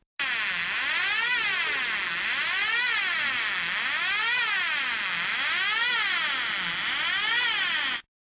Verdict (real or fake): real